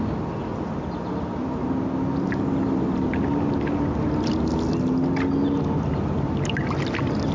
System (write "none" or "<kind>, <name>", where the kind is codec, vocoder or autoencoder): none